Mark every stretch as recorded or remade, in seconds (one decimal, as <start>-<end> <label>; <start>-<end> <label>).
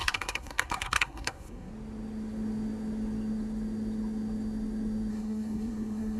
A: 0.0-1.7 remade; 1.7-5.1 recorded; 5.1-6.2 remade